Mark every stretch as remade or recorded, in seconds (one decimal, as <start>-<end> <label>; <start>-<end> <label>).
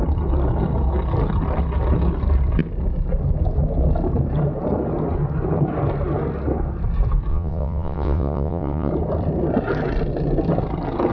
0.0-7.3 recorded; 7.3-8.9 remade; 8.9-11.1 recorded